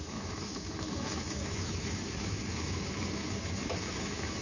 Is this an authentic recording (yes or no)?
no